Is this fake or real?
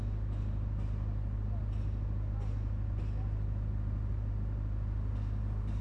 real